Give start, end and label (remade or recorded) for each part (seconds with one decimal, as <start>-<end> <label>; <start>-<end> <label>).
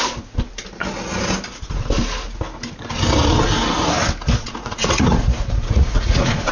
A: 0.0-4.4 recorded; 4.4-6.5 remade